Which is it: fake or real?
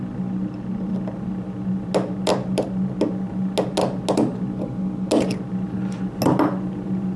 real